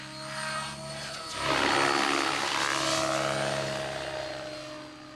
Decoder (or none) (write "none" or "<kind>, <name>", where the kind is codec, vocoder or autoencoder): none